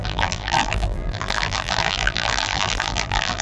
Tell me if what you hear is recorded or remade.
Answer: remade